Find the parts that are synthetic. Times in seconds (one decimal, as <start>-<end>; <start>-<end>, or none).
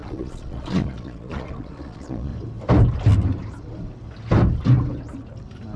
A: 0.0-2.3